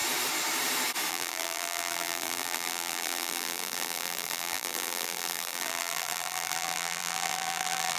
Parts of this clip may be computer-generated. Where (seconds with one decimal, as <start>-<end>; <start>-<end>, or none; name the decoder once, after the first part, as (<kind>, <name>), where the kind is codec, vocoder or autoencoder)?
1.1-8.0 (vocoder, BigVGAN v2)